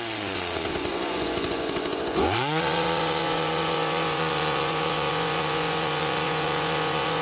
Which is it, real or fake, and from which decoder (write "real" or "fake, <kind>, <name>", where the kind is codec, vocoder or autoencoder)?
fake, vocoder, Vocos